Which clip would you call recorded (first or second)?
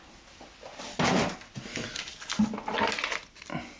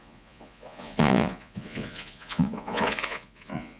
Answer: first